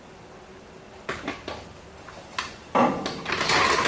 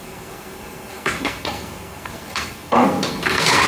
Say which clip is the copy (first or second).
second